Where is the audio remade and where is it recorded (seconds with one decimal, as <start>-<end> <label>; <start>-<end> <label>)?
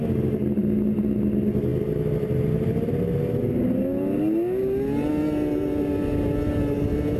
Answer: 0.0-7.2 recorded